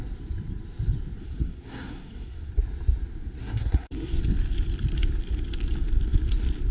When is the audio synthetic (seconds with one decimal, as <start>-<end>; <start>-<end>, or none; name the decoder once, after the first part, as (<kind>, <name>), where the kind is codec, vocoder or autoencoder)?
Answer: 1.2-2.5 (codec, SNAC); 3.4-4.2